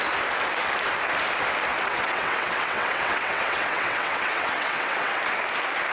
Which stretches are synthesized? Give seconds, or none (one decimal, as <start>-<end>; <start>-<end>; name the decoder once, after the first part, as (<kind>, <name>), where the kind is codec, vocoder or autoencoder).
1.7-5.2 (vocoder, WaveNeXt)